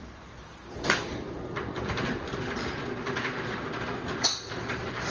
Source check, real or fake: fake